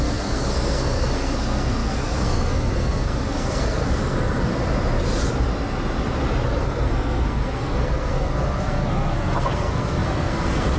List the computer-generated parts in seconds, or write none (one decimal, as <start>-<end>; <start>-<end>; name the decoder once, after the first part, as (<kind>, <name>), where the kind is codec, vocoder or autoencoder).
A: 0.0-4.5 (codec, SNAC); 6.6-10.8